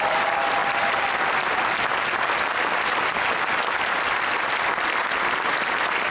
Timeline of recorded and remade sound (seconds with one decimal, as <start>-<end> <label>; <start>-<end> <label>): 0.0-6.1 recorded